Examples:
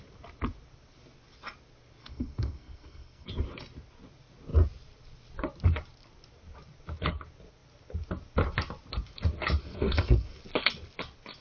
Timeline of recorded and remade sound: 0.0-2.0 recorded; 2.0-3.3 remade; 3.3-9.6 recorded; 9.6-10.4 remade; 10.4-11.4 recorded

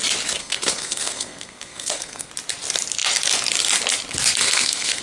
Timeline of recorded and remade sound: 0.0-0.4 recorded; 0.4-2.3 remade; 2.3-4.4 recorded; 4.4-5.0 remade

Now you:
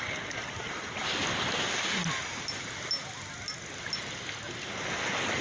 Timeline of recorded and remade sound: 0.0-5.4 recorded